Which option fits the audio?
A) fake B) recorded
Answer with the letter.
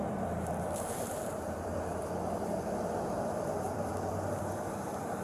A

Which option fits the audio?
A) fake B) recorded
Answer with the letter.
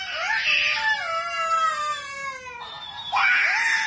B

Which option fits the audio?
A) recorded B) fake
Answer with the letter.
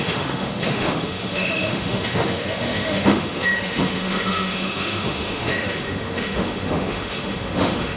B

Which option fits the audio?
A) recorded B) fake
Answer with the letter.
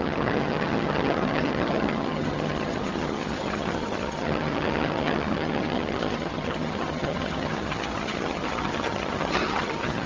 B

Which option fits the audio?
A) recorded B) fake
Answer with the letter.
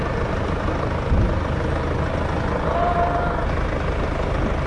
A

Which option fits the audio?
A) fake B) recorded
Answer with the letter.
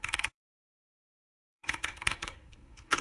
A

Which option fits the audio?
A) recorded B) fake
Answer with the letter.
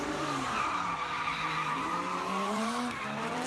B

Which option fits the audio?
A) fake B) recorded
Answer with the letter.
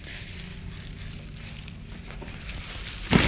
B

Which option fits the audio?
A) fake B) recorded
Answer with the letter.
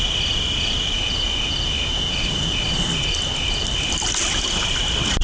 B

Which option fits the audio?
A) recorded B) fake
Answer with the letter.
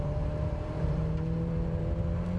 B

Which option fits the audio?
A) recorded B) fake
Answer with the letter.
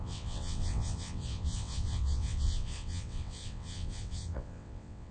B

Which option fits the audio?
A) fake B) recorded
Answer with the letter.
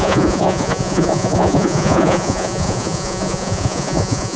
A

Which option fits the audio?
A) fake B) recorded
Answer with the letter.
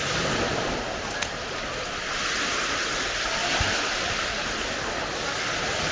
B